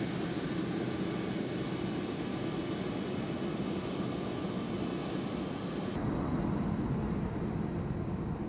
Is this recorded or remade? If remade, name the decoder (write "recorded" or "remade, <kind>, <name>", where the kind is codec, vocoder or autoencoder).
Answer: recorded